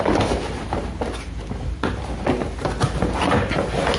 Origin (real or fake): real